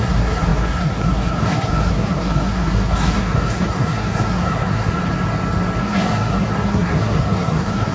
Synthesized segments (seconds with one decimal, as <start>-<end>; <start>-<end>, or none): 0.0-5.0; 5.8-7.9